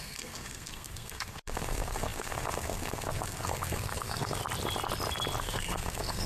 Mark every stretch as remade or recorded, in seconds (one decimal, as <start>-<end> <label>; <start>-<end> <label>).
0.0-4.4 remade; 4.4-5.4 recorded; 5.4-6.3 remade